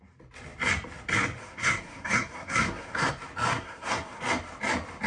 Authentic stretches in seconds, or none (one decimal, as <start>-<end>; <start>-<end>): 0.0-1.4; 3.1-3.5; 4.2-5.1